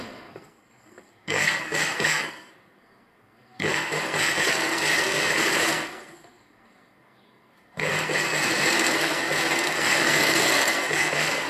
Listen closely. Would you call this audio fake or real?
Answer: fake